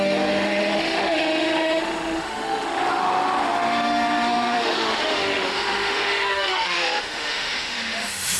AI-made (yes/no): yes